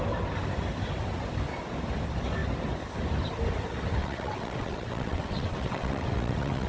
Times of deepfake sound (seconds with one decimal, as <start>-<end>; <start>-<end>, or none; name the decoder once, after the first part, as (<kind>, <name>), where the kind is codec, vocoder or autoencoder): 4.0-6.7 (vocoder, WaveNeXt)